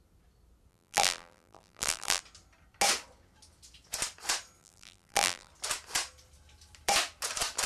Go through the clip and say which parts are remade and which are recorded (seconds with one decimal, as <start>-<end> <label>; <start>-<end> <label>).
0.0-0.7 recorded; 0.7-2.2 remade; 2.2-4.6 recorded; 4.6-5.5 remade; 5.5-7.7 recorded